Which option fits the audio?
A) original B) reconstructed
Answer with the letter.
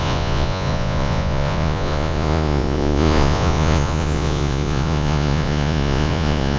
B